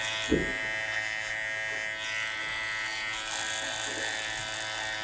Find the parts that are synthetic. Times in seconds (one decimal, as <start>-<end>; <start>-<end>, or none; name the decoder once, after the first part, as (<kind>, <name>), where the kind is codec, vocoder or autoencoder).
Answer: none